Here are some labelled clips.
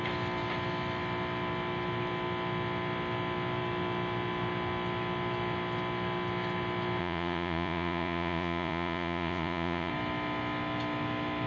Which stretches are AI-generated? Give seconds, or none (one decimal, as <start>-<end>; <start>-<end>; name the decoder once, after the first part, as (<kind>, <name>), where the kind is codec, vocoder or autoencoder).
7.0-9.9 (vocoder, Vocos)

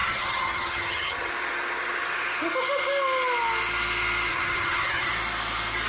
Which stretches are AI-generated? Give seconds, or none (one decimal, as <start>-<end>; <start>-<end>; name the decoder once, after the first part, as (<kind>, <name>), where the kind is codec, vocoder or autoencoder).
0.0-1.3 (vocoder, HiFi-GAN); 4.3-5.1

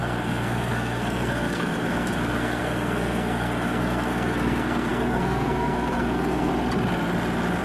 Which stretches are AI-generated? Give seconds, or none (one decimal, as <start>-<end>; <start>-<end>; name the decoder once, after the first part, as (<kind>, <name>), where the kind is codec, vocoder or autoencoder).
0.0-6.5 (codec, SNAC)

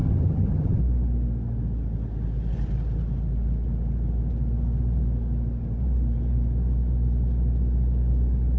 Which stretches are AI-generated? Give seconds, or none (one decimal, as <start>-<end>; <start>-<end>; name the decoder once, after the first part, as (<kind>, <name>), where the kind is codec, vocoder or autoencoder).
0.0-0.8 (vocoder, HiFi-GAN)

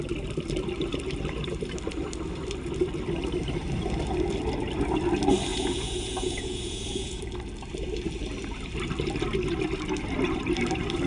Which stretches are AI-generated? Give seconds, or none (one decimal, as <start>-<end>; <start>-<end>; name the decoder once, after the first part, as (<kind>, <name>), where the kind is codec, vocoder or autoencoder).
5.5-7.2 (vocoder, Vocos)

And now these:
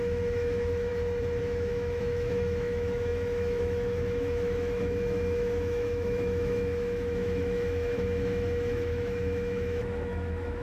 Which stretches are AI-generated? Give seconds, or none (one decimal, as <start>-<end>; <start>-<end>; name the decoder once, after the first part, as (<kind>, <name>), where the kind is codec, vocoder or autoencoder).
0.0-0.9 (autoencoder, DAC-VAE); 1.4-10.6